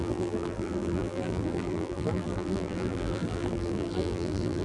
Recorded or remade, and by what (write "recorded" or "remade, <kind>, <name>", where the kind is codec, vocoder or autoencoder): remade, vocoder, BigVGAN v2